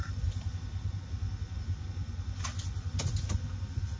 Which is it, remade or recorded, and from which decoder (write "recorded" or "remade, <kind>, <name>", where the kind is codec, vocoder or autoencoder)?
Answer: recorded